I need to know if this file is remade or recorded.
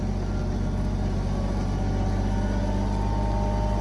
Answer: recorded